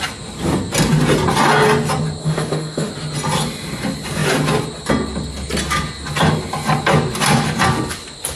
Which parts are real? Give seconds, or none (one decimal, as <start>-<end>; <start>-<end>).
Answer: 0.0-2.2; 2.9-8.4